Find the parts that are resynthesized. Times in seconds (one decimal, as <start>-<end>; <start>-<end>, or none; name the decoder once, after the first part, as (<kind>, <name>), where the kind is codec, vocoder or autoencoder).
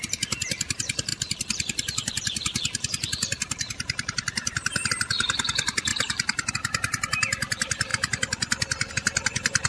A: 0.0-7.9 (vocoder, BigVGAN v2); 8.9-9.7